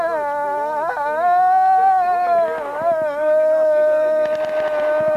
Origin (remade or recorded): recorded